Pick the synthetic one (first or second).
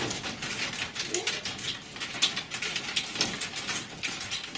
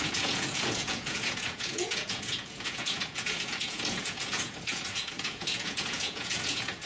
second